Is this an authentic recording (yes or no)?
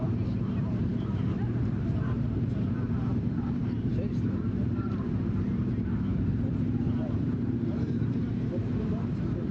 no